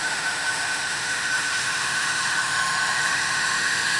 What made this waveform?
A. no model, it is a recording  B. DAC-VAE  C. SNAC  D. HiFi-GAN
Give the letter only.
B